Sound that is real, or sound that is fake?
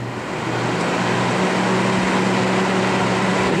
real